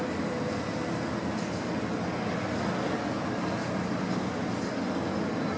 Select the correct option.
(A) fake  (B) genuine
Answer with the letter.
B